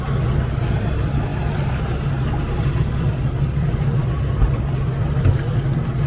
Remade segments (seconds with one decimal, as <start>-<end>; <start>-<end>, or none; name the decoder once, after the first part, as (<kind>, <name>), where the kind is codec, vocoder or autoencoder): none